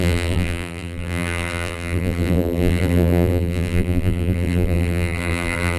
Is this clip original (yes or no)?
no